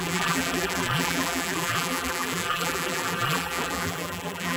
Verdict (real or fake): fake